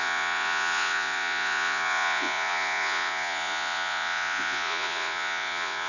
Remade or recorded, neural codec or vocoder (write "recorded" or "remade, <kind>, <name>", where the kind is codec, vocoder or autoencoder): remade, vocoder, Vocos